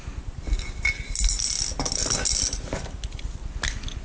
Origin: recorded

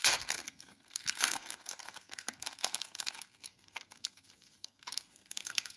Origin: remade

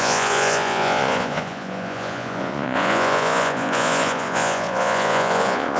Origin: remade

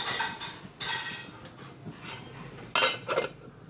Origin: recorded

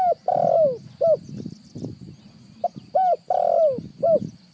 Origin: recorded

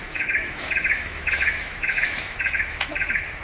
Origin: remade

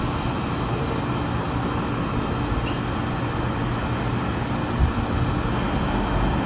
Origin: recorded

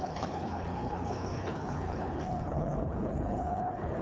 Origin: remade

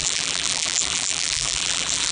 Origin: remade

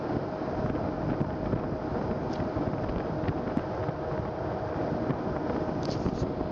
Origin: recorded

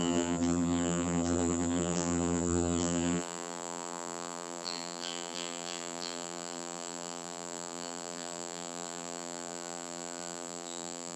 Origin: remade